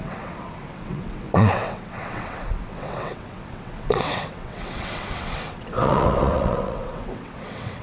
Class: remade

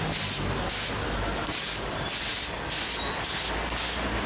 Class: recorded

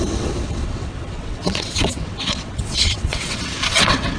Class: remade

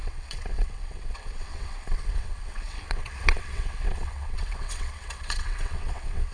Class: remade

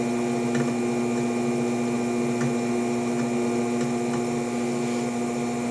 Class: recorded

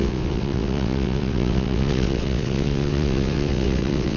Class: remade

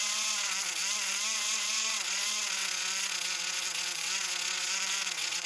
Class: remade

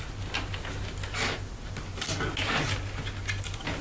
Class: recorded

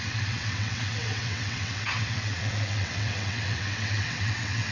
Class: remade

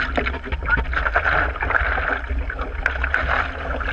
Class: recorded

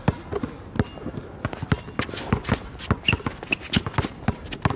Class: recorded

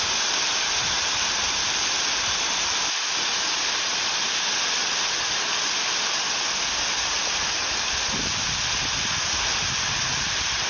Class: recorded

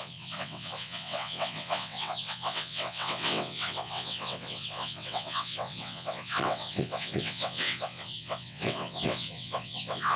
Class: remade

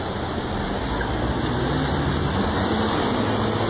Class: recorded